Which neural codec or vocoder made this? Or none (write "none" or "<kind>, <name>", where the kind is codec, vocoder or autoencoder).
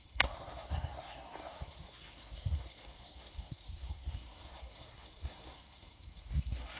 codec, SNAC